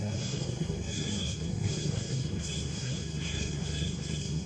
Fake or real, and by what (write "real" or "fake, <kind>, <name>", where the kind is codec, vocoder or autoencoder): fake, codec, SNAC